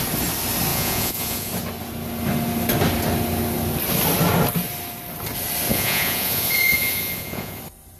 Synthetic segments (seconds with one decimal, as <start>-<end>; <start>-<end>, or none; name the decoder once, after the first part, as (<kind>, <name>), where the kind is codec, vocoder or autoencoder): 0.7-1.5 (vocoder, Vocos); 5.7-7.6